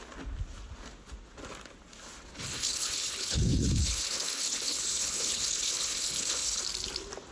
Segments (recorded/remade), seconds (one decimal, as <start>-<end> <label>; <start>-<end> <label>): 0.0-2.3 recorded; 2.3-6.6 remade; 6.6-7.3 recorded